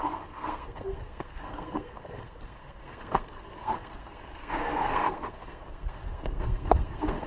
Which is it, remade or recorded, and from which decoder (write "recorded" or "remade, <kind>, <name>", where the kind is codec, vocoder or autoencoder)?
remade, codec, SNAC